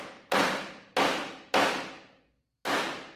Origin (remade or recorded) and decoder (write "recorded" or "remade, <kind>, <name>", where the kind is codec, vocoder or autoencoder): recorded